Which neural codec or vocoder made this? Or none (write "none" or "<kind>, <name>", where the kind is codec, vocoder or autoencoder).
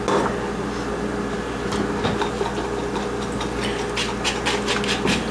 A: none